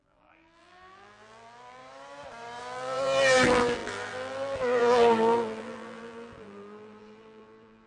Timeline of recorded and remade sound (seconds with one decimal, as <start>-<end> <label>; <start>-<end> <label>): 0.0-1.8 remade; 1.8-2.6 recorded; 2.6-7.9 remade